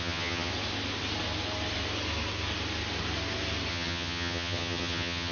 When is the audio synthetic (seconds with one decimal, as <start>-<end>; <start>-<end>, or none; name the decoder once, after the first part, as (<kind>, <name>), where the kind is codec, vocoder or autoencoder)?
0.0-0.5 (vocoder, HiFi-GAN); 3.7-5.3